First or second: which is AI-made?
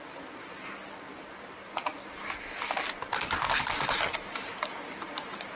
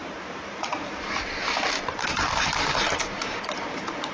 second